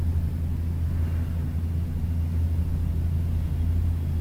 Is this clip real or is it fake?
real